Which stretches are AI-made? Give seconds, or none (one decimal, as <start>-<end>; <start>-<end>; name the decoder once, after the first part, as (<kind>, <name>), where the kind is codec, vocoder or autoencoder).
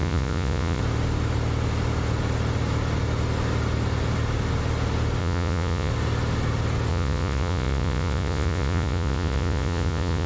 0.0-0.8 (vocoder, Vocos); 5.2-5.9; 6.9-10.3